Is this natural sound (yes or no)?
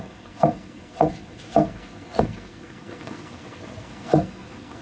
no